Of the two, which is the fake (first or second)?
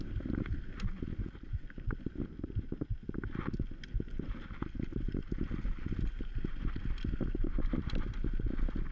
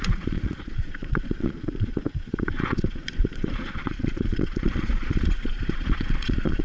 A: second